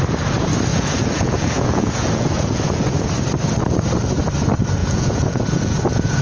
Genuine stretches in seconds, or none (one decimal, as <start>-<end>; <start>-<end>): 0.0-0.7; 2.9-4.8